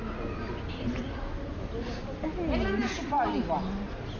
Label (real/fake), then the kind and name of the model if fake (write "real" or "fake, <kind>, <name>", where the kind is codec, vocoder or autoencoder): real